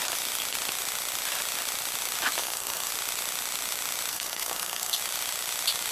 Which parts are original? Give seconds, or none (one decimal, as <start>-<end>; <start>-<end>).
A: 0.0-2.4; 2.9-4.1; 5.0-5.9

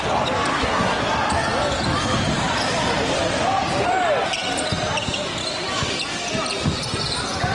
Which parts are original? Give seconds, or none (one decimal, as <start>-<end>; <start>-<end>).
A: 0.0-0.5; 1.0-7.5

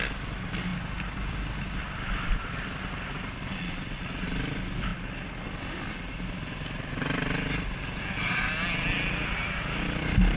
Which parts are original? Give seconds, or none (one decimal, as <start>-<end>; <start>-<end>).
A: 0.0-10.4

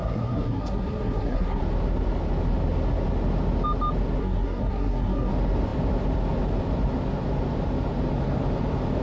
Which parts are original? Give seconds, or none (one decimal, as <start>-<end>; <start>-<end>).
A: 1.6-4.2; 5.3-9.0

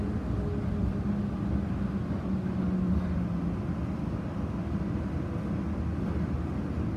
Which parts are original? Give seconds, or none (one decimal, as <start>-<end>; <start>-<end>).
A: 0.0-7.0